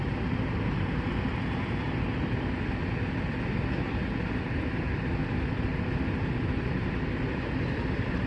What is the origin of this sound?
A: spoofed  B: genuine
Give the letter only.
B